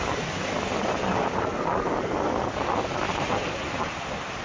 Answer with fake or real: real